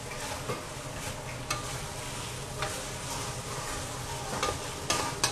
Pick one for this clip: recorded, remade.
recorded